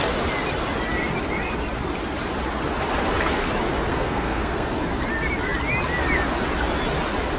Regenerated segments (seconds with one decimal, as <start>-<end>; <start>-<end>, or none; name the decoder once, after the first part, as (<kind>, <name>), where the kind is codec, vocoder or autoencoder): 3.9-4.7 (codec, SNAC)